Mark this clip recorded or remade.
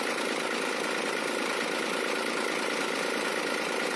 recorded